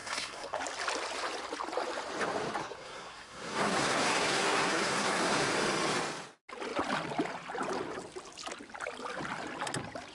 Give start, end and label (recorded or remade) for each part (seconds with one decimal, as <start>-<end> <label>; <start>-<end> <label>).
0.0-0.6 remade; 0.6-2.6 recorded; 2.6-5.5 remade; 5.5-10.1 recorded